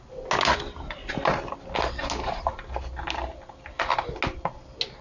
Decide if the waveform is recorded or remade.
recorded